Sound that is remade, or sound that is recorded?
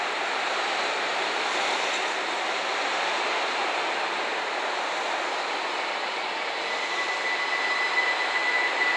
recorded